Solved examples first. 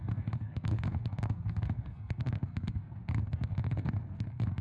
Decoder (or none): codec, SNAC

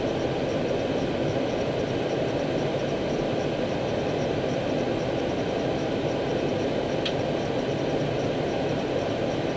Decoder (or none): none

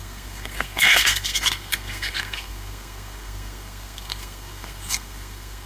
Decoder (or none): codec, SNAC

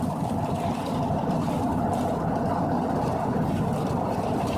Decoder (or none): none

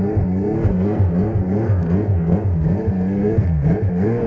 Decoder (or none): codec, SNAC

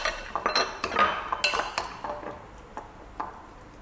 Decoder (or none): none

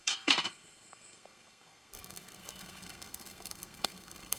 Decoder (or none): codec, SNAC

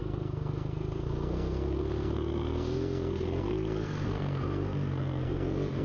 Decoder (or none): codec, SNAC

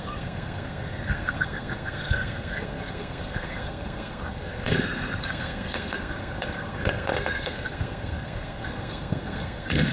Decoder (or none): codec, SNAC